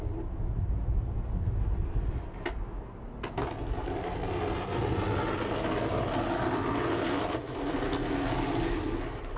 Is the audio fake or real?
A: real